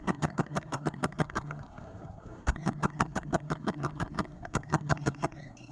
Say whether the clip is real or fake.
fake